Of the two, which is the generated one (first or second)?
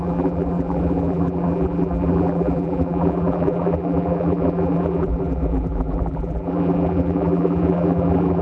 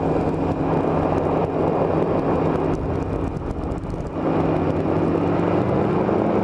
first